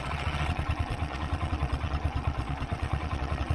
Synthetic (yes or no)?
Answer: yes